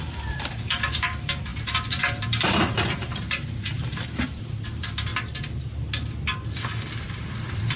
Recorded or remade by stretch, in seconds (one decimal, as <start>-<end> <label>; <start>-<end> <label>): 0.0-5.1 remade; 5.1-7.0 recorded; 7.0-7.8 remade